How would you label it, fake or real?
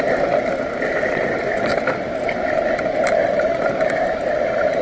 real